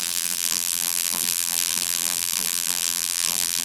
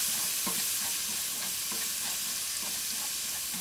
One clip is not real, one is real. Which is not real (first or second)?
first